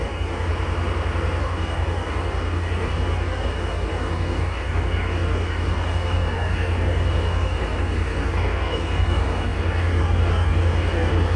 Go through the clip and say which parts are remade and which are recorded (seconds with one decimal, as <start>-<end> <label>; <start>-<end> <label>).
0.0-0.5 remade; 0.5-1.4 recorded; 1.4-11.4 remade